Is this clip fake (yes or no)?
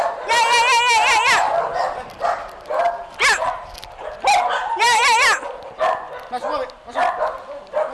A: no